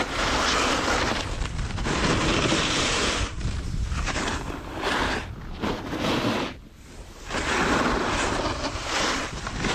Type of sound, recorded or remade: recorded